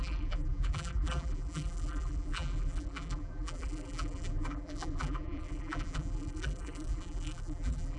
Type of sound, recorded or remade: remade